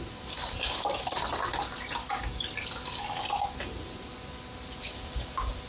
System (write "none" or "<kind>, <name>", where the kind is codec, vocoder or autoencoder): none